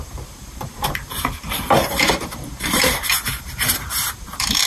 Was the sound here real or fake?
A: fake